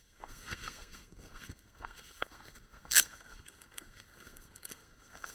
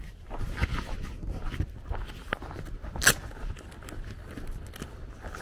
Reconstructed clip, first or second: first